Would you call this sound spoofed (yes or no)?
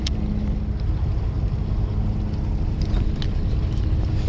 no